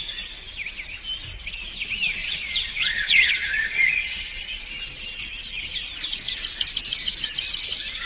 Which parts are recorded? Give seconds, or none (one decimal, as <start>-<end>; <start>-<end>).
0.0-2.2; 4.7-8.1